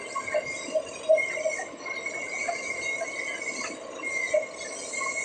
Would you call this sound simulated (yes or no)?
no